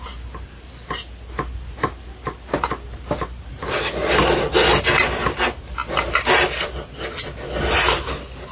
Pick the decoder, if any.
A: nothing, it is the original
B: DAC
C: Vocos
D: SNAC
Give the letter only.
A